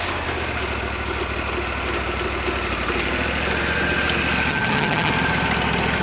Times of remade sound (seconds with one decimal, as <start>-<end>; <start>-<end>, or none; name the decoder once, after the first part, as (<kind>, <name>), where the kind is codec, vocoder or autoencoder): 4.5-5.1 (vocoder, HiFi-GAN)